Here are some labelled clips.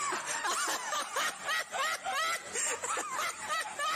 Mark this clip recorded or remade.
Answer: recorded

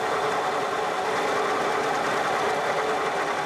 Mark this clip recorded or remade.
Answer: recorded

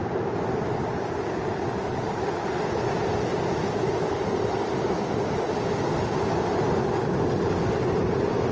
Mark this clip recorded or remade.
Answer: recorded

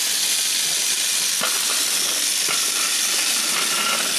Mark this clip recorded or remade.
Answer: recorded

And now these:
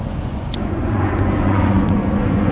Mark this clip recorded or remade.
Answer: remade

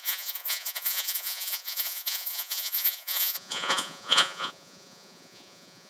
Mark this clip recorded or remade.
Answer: remade